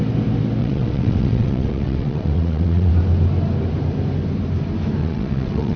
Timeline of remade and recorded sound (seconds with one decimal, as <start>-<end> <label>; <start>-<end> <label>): 0.0-0.6 recorded; 0.6-2.9 remade; 2.9-5.0 recorded; 5.0-5.8 remade